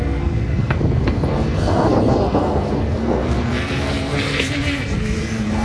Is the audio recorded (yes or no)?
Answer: no